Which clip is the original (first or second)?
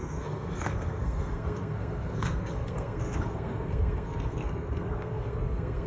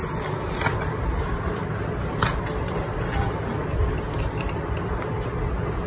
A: second